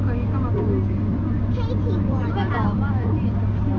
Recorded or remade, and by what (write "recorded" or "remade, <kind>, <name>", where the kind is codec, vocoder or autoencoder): remade, vocoder, BigVGAN v2